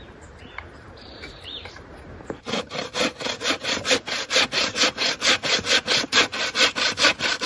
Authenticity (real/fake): fake